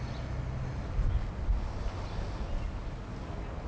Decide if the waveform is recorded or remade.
recorded